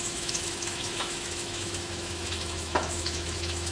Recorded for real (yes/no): no